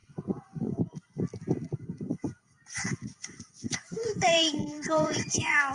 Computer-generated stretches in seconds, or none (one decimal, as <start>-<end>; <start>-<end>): 0.0-0.8; 2.1-5.7